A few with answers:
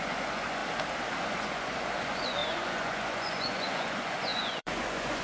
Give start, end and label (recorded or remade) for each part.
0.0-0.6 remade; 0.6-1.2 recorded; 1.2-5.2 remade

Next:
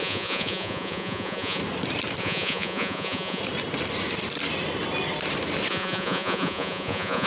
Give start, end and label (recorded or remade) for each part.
0.0-1.6 remade; 1.6-2.2 recorded; 2.2-3.4 remade; 3.4-5.7 recorded; 5.7-7.3 remade